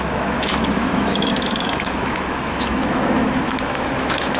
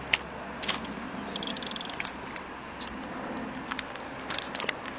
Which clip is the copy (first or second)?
first